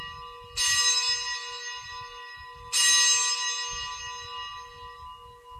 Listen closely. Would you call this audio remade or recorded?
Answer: recorded